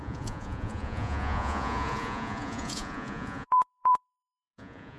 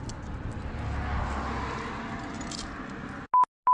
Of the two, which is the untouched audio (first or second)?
second